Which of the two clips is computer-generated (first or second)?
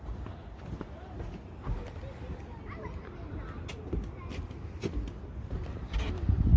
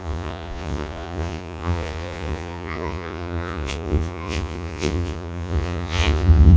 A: second